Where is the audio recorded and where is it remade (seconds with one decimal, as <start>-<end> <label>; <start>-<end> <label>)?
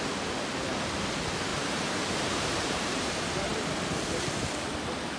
0.0-1.5 recorded; 1.5-3.1 remade; 3.1-5.2 recorded